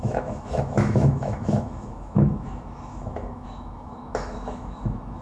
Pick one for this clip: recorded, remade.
remade